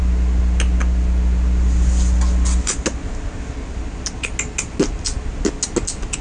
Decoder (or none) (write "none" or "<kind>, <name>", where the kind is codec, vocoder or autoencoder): none